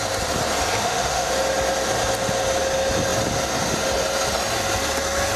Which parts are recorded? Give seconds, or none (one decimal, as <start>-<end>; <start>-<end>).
0.0-0.8; 1.3-5.4